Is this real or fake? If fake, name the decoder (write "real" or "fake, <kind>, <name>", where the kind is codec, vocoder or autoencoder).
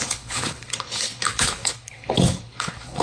fake, codec, HILCodec